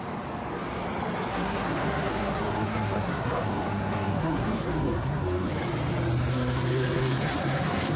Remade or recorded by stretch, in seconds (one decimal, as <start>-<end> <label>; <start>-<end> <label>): 0.0-1.3 recorded; 1.3-5.5 remade; 5.5-6.3 recorded; 6.3-8.0 remade